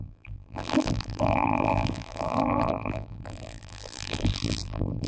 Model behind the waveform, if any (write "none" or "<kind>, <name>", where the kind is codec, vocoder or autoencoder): vocoder, BigVGAN v2